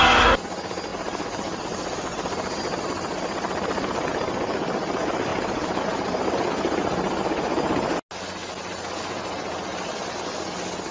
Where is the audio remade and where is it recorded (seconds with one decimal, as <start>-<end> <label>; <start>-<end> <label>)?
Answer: 0.0-0.9 recorded; 0.9-2.8 remade; 2.8-5.3 recorded; 5.3-5.8 remade; 5.8-10.9 recorded